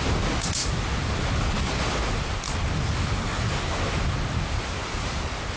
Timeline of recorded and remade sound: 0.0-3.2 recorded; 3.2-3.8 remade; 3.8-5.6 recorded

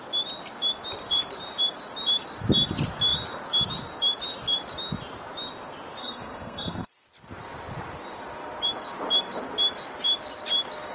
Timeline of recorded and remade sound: 0.0-6.0 recorded; 6.0-6.9 remade; 6.9-10.9 recorded

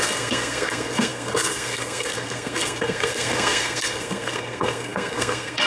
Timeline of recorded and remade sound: 0.0-5.7 remade

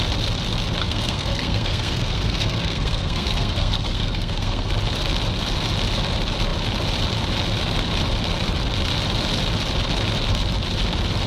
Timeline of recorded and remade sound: 0.0-0.8 recorded; 0.8-4.7 remade; 4.7-11.3 recorded

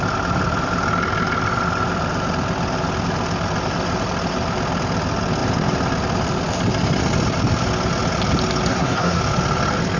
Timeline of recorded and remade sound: 0.0-8.7 recorded; 8.7-9.2 remade; 9.2-10.0 recorded